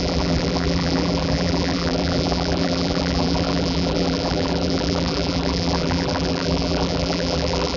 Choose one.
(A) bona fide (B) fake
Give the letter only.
B